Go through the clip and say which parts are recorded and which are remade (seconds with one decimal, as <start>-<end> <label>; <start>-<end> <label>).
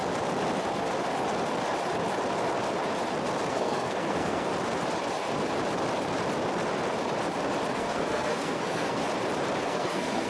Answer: 0.0-3.5 recorded; 3.5-4.5 remade; 4.5-7.7 recorded; 7.7-9.0 remade; 9.0-9.6 recorded; 9.6-10.3 remade